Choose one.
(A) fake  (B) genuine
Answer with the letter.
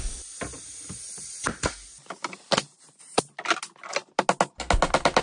B